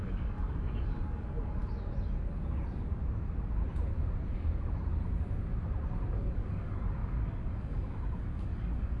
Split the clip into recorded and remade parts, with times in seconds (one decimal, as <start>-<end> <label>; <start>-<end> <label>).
0.0-1.6 remade; 1.6-6.1 recorded; 6.1-9.0 remade

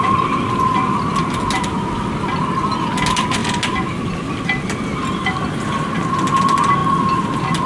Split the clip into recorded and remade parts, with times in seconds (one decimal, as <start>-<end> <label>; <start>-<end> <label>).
0.0-7.7 recorded